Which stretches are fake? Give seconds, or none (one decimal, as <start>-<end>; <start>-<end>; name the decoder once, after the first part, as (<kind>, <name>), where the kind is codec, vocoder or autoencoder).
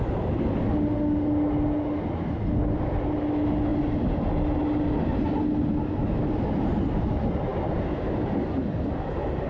none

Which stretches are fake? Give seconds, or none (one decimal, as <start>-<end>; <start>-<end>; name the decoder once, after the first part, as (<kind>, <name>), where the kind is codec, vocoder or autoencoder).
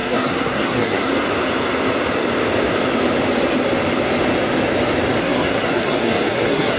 0.0-1.1 (codec, SNAC); 5.2-6.8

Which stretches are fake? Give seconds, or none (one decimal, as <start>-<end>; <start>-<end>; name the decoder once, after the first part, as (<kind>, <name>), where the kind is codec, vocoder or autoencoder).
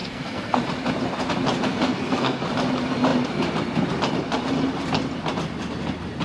0.0-0.6 (codec, SNAC); 1.7-2.4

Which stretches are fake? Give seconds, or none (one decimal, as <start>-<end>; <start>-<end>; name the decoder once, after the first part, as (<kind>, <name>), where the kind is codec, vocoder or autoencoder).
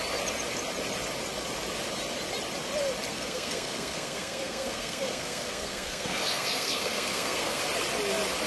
3.1-7.6 (codec, SNAC)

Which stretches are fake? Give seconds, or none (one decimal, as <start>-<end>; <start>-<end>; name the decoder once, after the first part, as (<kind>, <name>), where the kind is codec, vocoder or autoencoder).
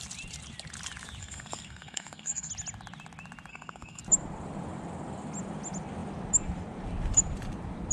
1.2-2.5 (codec, SNAC); 3.5-4.0